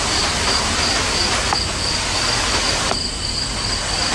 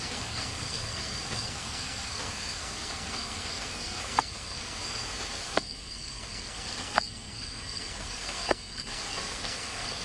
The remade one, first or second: second